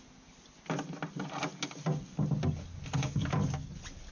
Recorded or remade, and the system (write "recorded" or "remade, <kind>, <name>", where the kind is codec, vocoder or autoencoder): recorded